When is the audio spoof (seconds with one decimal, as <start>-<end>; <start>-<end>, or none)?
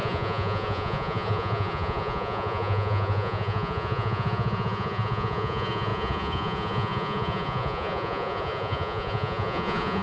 0.0-10.0